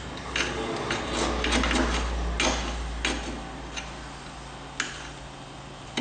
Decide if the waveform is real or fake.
real